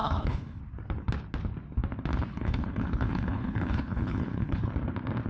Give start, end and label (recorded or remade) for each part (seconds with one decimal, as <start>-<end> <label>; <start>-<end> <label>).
0.0-0.6 remade; 0.6-2.3 recorded; 2.3-4.7 remade; 4.7-5.3 recorded